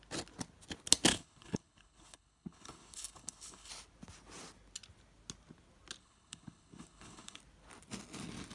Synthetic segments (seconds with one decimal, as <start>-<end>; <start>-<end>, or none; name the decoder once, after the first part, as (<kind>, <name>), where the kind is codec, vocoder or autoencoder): 1.1-3.7 (codec, HILCodec); 6.0-7.4